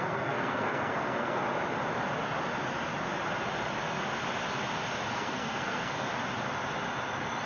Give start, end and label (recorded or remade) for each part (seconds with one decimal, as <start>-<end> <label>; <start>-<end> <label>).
0.0-1.4 remade; 1.4-5.1 recorded; 5.1-6.1 remade; 6.1-7.5 recorded